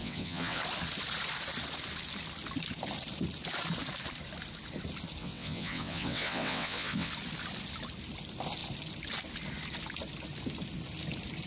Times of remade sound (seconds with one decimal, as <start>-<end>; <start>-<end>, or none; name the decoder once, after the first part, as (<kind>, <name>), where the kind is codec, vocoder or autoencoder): 0.0-0.6 (vocoder, WaveNeXt); 5.2-7.1